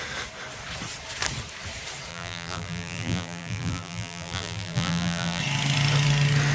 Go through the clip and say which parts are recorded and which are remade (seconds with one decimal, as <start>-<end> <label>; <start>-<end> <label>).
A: 0.0-2.1 recorded; 2.1-5.4 remade; 5.4-6.5 recorded